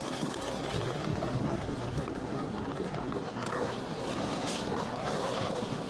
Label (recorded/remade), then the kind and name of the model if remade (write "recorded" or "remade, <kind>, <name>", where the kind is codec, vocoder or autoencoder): remade, codec, SNAC